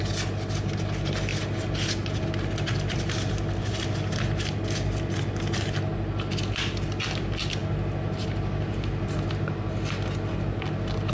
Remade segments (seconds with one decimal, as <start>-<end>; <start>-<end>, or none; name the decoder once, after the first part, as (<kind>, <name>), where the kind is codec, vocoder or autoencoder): none